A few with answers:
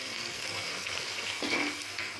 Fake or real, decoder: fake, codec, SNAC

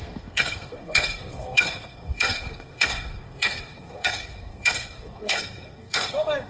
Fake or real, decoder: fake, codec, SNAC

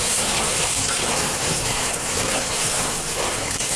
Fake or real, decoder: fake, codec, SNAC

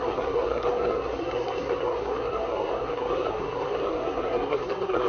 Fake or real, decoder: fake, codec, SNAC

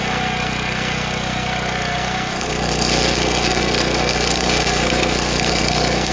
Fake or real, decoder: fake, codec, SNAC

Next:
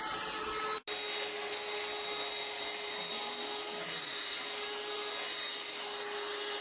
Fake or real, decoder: real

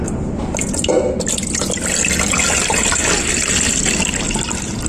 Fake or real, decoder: real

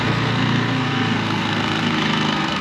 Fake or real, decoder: fake, codec, SNAC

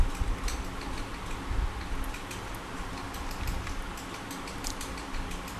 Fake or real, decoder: real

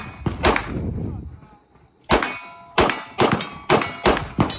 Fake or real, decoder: real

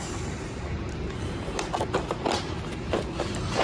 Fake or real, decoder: real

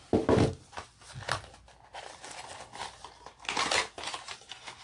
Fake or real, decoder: real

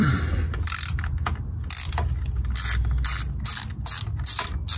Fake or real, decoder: real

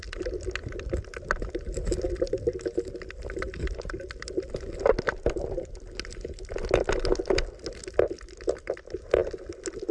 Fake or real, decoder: real